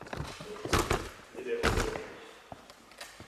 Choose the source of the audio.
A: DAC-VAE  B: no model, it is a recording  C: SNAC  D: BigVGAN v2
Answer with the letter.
B